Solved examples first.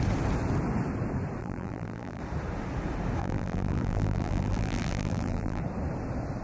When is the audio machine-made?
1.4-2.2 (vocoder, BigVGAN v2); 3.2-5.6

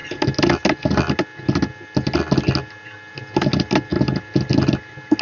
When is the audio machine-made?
none